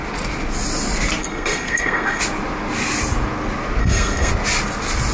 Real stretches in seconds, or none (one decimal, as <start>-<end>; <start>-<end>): 0.0-1.2; 2.2-3.8; 4.3-5.1